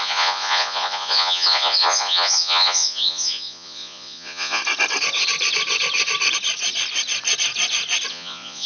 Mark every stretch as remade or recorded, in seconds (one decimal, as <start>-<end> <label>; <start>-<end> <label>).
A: 0.0-4.6 remade; 4.6-8.1 recorded; 8.1-8.7 remade

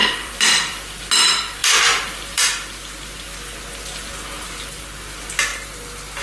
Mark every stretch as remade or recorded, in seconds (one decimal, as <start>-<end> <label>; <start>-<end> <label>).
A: 0.0-1.0 remade; 1.0-1.6 recorded; 1.6-2.4 remade; 2.4-5.5 recorded; 5.5-6.2 remade

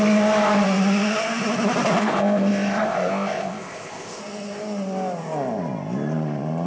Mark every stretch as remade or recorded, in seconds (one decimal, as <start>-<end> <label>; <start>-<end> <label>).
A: 0.0-2.0 recorded; 2.0-4.2 remade; 4.2-6.7 recorded

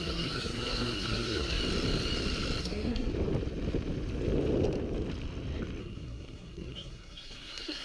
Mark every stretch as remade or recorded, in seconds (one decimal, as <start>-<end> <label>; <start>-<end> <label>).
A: 0.0-1.6 remade; 1.6-2.6 recorded; 2.6-3.1 remade; 3.1-5.8 recorded; 5.8-7.8 remade

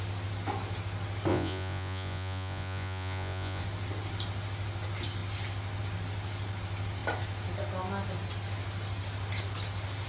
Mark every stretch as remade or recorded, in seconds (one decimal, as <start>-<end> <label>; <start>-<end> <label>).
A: 0.0-1.3 recorded; 1.3-3.6 remade; 3.6-10.1 recorded

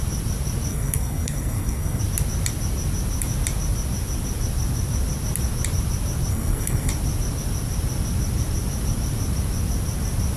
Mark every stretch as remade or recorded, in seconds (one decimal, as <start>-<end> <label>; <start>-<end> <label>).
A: 0.0-0.7 recorded; 0.7-2.0 remade; 2.0-6.3 recorded; 6.3-6.9 remade; 6.9-10.4 recorded